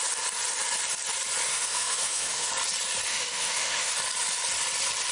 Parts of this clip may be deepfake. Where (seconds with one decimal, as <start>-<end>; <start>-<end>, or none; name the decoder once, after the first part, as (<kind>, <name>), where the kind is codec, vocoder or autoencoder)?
1.5-2.5 (autoencoder, DAC-VAE); 3.1-3.9